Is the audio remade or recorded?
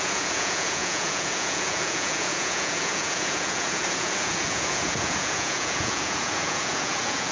remade